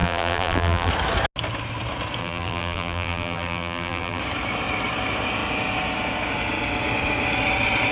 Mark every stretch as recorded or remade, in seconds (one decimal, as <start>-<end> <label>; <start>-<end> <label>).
0.0-0.9 remade; 0.9-2.2 recorded; 2.2-4.2 remade; 4.2-7.9 recorded